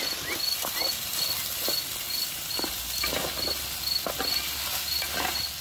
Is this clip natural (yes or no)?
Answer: yes